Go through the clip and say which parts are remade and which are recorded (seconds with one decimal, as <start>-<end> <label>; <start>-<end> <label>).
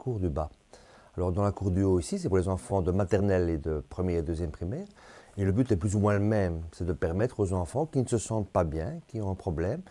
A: 0.0-2.7 recorded; 2.7-3.2 remade; 3.2-4.9 recorded; 4.9-5.5 remade; 5.5-7.2 recorded; 7.2-9.0 remade; 9.0-9.9 recorded